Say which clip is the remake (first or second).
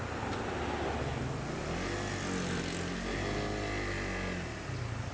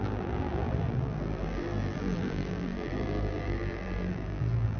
second